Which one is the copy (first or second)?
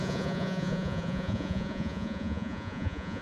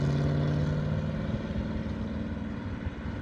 first